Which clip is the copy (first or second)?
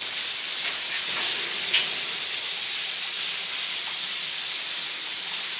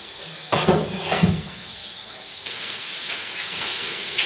second